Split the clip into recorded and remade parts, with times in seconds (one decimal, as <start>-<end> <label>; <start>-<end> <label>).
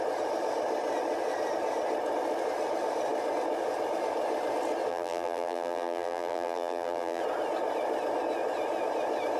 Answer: 0.0-4.9 recorded; 4.9-7.2 remade; 7.2-9.4 recorded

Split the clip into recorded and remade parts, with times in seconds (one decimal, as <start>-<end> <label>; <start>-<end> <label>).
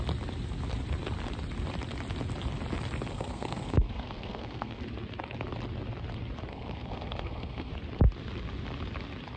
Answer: 0.0-3.1 recorded; 3.1-4.8 remade; 4.8-6.5 recorded; 6.5-7.7 remade; 7.7-9.4 recorded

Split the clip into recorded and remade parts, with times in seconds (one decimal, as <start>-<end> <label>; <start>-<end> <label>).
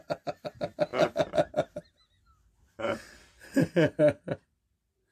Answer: 0.0-5.1 recorded